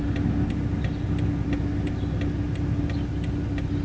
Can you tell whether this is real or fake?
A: real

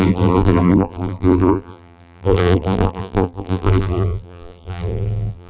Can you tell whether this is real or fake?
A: fake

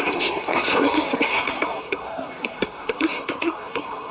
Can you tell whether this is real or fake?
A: fake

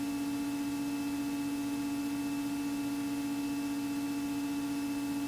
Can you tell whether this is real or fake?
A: real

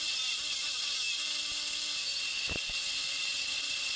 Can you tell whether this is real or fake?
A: fake